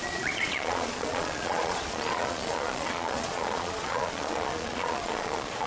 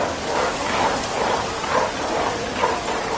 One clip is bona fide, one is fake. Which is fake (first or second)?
first